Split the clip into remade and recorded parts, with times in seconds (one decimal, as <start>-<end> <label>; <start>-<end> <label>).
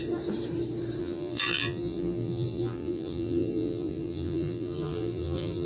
0.0-1.0 recorded; 1.0-5.7 remade